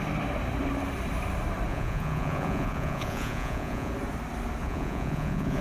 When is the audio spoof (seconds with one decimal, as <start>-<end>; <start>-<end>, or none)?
1.7-3.9; 4.6-5.6